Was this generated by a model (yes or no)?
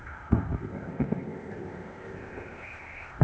yes